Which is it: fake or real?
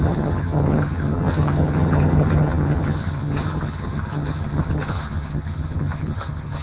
fake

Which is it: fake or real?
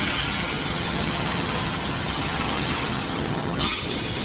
fake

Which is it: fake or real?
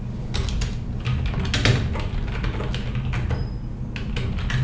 real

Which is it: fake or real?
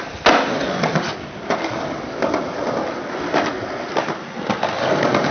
real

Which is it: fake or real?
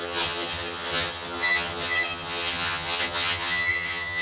fake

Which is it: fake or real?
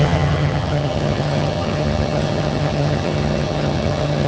fake